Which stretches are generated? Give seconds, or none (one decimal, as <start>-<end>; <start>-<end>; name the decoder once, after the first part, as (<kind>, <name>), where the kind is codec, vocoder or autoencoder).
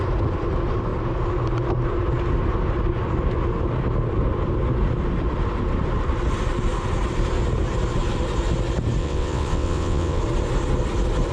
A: 9.0-10.2 (vocoder, WaveNeXt)